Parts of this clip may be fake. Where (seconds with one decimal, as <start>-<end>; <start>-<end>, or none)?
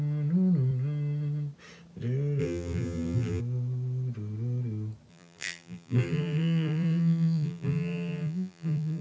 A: 2.4-3.4; 5.1-9.0